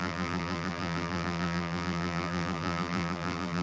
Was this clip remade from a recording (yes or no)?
yes